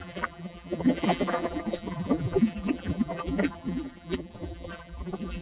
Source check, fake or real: fake